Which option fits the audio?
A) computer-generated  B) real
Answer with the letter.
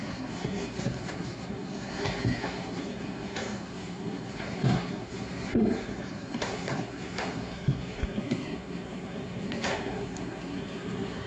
A